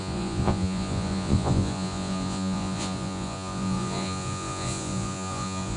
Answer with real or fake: fake